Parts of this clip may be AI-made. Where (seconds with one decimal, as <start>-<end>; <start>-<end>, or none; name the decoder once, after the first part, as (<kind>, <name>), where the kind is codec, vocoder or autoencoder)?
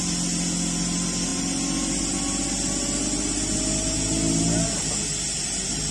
none